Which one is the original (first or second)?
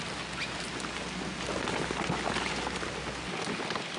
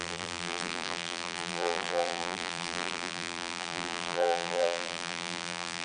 first